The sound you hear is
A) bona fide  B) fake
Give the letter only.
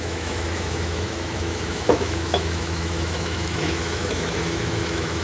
B